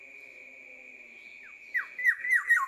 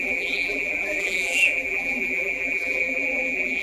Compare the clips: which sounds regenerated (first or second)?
second